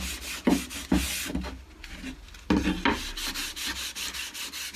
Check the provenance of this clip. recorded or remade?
recorded